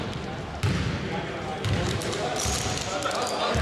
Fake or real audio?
real